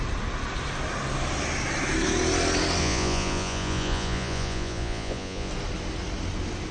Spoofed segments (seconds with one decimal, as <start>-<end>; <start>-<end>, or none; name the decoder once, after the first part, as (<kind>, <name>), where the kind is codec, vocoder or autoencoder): 2.8-5.5 (vocoder, Vocos)